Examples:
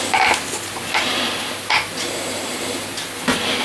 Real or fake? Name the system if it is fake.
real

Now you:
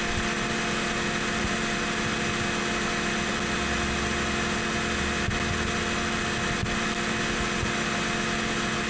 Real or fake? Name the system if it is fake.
real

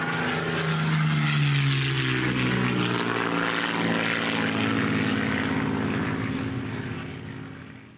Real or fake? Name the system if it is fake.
real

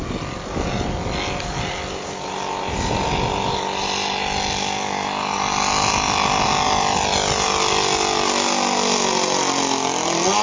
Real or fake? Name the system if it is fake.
real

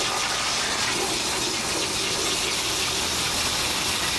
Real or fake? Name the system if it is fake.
real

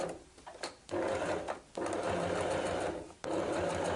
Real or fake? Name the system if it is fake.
real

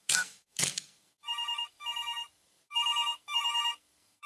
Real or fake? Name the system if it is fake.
fake, codec, SNAC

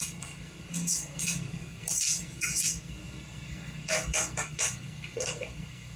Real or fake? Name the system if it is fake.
fake, codec, SNAC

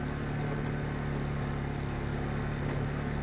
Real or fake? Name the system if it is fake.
real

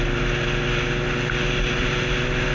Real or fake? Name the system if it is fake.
real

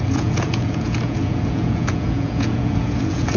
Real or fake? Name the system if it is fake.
fake, vocoder, Vocos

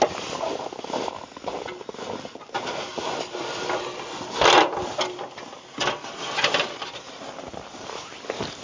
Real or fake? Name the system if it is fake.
real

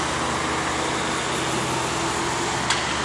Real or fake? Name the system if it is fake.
real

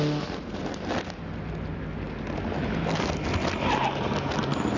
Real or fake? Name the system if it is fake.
real